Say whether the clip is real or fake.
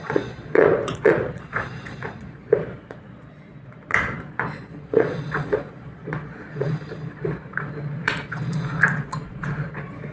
fake